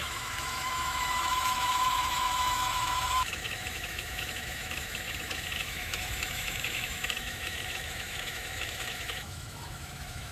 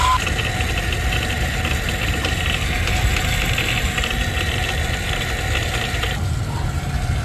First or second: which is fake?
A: first